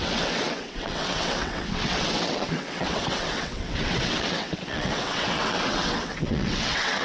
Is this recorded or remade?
remade